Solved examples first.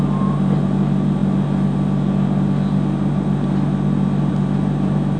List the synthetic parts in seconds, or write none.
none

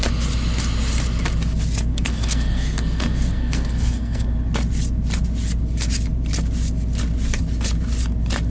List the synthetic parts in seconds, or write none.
1.9-4.3 (codec, SNAC)

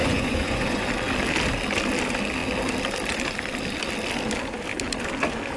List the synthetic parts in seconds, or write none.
0.0-0.9 (vocoder, Vocos)

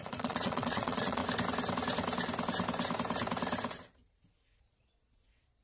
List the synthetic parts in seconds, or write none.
0.0-1.2 (vocoder, Vocos); 4.6-5.6

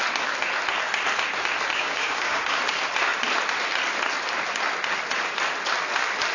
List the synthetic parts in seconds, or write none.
1.7-2.6 (codec, DAC)

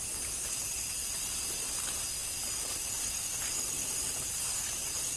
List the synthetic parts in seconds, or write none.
none

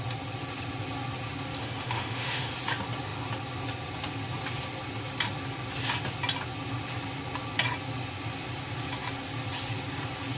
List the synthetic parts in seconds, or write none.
1.6-2.5 (autoencoder, DAC-VAE)